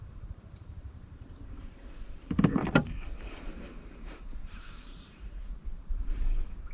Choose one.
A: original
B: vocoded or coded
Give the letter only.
B